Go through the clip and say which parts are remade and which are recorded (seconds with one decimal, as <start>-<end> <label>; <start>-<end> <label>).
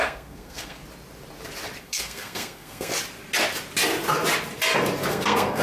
0.0-0.8 remade; 0.8-1.8 recorded; 1.8-2.9 remade; 2.9-5.1 recorded; 5.1-5.6 remade